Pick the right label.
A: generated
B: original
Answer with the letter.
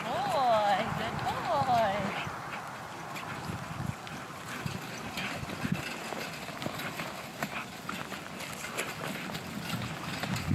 B